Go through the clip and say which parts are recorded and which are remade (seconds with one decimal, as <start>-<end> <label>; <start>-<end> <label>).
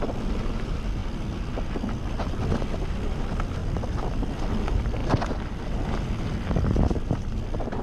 0.0-7.8 recorded